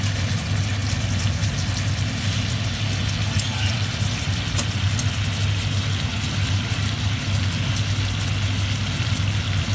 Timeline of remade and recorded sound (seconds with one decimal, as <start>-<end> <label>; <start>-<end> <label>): 0.0-9.7 recorded